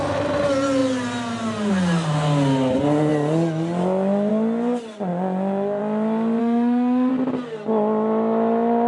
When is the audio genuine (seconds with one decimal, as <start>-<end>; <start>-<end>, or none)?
0.0-6.4; 7.1-8.9